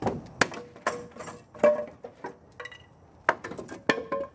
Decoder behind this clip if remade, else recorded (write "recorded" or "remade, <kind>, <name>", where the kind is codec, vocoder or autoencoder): recorded